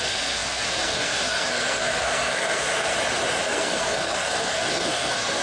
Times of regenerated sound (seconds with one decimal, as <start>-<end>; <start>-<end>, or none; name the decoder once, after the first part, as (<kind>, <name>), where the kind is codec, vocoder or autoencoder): 0.0-2.9 (codec, SNAC); 3.4-5.4